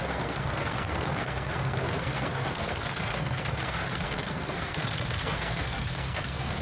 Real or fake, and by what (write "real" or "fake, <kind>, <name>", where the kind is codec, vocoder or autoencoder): fake, codec, SNAC